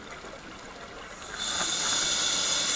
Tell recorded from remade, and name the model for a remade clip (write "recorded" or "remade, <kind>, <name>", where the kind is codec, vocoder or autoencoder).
recorded